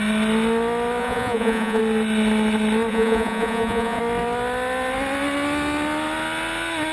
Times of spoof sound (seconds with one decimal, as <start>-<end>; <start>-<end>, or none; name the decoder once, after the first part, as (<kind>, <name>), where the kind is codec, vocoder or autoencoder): 1.0-1.8 (vocoder, Vocos); 2.9-4.0